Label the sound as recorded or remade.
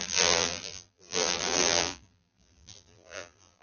remade